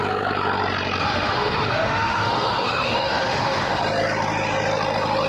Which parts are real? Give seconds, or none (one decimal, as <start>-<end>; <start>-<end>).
0.0-1.0; 3.8-5.3